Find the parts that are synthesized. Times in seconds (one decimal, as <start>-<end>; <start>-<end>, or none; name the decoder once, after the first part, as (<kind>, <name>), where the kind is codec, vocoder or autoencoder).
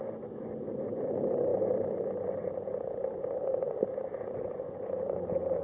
none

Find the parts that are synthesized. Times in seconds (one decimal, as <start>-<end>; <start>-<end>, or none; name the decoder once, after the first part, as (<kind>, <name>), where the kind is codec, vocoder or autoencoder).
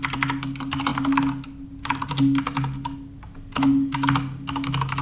none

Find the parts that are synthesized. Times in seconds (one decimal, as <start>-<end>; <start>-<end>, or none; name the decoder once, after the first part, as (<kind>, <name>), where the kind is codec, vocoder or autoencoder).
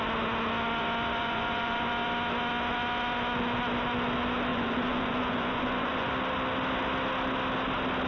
1.2-1.9 (vocoder, Vocos); 4.5-6.1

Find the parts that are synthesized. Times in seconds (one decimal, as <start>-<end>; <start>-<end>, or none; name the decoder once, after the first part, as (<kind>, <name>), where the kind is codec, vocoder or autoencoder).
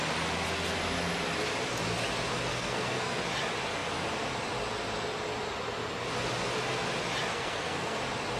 2.5-3.2 (codec, SNAC); 7.3-8.0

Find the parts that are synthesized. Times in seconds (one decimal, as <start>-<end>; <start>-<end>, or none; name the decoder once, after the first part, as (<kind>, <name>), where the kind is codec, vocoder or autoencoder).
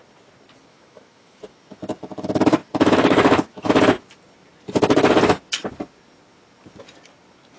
0.7-3.7 (autoencoder, DAC-VAE)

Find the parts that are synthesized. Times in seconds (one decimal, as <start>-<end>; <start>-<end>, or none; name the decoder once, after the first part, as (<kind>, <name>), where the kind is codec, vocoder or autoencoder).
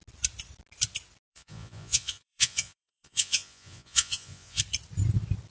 1.3-4.6 (vocoder, Vocos)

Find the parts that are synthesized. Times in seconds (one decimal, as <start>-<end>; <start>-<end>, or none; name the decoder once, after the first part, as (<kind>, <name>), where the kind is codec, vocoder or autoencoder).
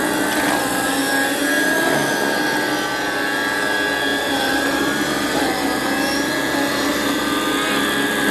4.1-5.4 (vocoder, BigVGAN v2)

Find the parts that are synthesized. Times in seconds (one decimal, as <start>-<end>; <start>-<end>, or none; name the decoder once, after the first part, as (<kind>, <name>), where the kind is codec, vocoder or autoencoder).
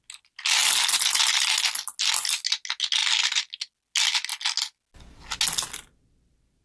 none